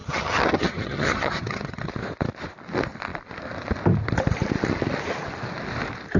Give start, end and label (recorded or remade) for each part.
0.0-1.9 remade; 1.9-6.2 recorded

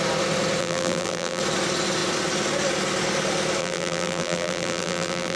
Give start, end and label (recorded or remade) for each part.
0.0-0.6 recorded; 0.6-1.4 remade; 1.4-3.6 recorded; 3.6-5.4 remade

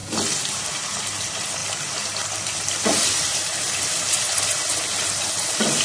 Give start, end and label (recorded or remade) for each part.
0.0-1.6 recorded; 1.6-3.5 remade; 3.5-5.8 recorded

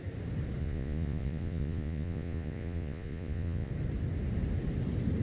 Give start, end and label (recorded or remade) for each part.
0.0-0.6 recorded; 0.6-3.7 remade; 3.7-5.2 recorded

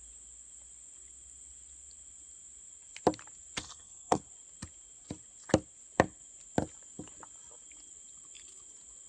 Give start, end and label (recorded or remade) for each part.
0.0-3.6 recorded; 3.6-4.2 remade; 4.2-9.1 recorded

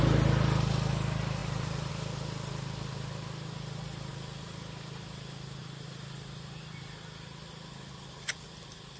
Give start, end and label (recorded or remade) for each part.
0.0-1.4 recorded; 1.4-1.9 remade; 1.9-9.0 recorded